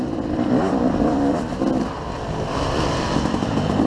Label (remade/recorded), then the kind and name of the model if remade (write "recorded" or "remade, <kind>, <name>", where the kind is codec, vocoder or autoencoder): recorded